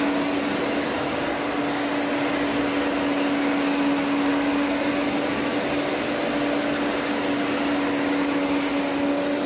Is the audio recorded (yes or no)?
yes